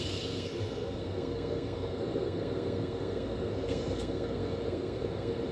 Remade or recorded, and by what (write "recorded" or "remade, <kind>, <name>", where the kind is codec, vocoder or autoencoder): remade, codec, SNAC